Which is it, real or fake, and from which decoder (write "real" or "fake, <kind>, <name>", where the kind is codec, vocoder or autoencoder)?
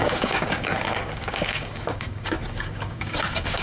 fake, codec, DAC